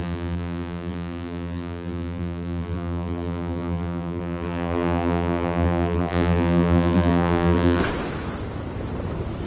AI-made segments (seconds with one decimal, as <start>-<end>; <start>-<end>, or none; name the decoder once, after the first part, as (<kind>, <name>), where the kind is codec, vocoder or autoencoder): 0.0-7.8 (vocoder, BigVGAN v2)